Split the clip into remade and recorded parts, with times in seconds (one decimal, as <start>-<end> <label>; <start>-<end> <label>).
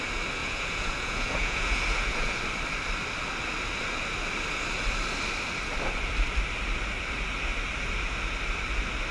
0.0-0.4 recorded; 0.4-2.4 remade; 2.4-9.1 recorded